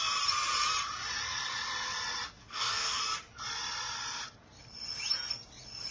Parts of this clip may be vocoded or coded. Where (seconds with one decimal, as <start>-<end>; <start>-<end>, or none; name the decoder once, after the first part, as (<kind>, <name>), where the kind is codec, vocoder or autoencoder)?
2.4-3.0 (codec, DAC)